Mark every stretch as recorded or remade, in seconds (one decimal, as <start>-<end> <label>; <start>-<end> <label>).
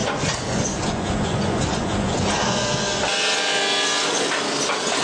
0.0-3.0 remade; 3.0-5.0 recorded